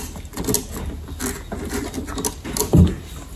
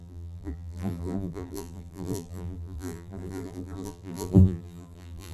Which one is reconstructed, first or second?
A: second